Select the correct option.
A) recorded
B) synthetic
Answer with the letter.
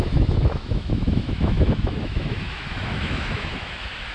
B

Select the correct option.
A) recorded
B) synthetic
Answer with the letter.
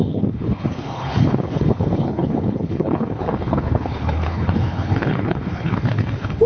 B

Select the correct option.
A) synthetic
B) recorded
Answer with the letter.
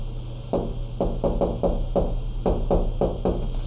B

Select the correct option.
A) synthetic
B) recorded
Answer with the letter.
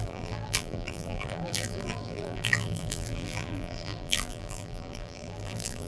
A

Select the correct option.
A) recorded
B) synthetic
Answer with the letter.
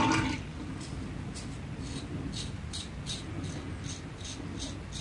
A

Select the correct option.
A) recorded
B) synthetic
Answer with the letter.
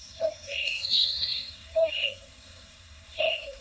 B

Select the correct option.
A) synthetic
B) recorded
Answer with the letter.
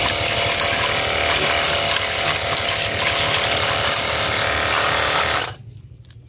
B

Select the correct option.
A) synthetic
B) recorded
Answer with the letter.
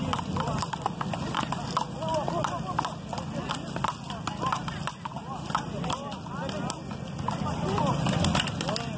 B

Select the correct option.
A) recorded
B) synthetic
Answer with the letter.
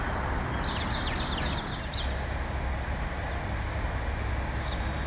A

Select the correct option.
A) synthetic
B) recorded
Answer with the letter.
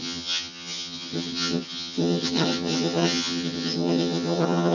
A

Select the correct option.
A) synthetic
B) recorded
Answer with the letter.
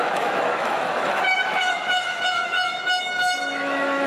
A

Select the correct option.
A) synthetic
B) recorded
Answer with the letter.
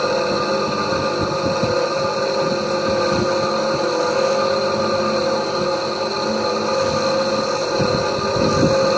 B